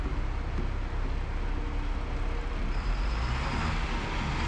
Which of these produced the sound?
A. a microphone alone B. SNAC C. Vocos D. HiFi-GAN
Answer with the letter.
A